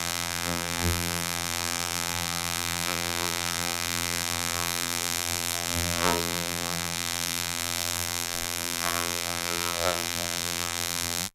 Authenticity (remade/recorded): remade